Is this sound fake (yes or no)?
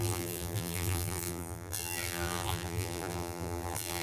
yes